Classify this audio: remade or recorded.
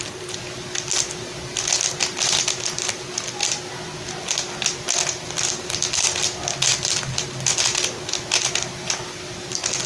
recorded